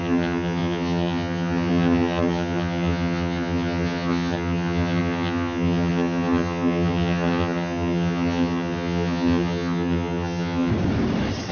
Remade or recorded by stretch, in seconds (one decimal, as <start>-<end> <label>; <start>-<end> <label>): 0.0-10.7 remade; 10.7-11.5 recorded